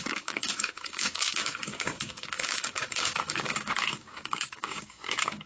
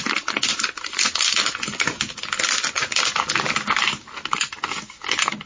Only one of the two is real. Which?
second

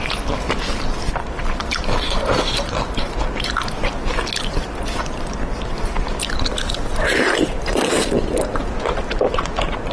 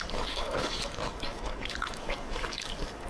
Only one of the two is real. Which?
first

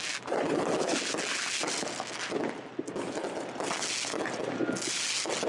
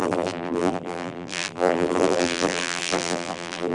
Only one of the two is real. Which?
first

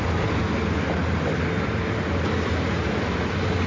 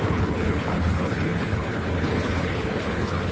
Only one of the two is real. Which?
first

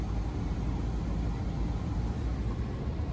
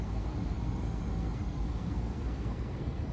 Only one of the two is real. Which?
first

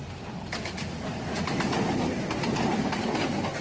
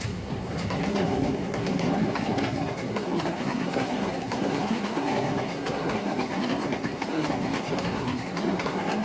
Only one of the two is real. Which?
first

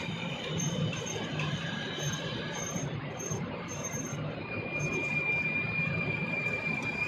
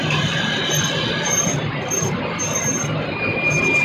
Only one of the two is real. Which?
second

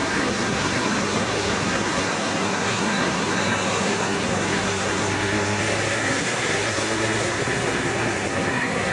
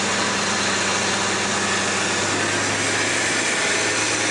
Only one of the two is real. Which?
second